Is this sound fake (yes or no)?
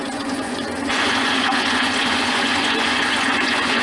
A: yes